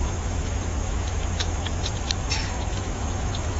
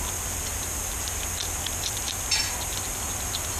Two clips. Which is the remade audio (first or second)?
first